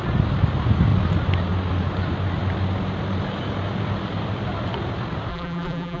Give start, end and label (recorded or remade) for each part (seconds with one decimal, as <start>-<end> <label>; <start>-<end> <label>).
0.0-5.3 recorded; 5.3-6.0 remade